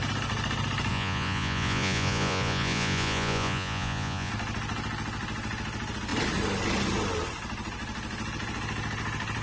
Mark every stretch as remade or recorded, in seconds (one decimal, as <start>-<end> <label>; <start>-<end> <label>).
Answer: 0.0-0.9 recorded; 0.9-4.3 remade; 4.3-9.4 recorded